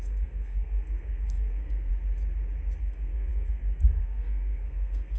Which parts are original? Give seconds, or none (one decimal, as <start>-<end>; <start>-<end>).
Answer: 1.9-2.8